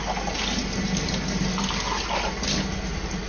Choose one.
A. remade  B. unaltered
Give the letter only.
B